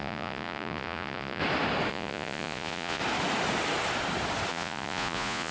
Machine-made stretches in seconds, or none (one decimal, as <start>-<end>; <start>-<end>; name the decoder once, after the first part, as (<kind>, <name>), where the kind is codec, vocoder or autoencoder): 0.0-1.4 (vocoder, Vocos); 1.9-3.0; 4.5-5.5